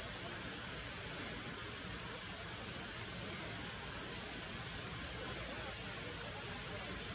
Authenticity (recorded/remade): recorded